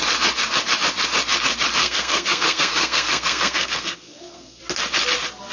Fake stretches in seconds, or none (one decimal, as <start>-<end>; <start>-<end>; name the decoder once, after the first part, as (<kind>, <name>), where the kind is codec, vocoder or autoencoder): 1.8-4.6 (codec, SNAC)